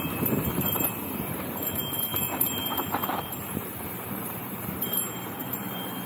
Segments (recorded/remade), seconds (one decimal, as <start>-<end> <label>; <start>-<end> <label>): 0.0-6.1 remade